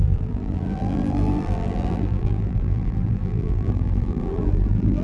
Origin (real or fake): fake